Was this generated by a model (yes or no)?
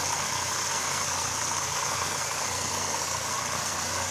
yes